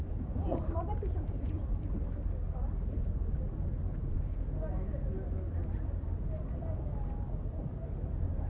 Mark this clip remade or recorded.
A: recorded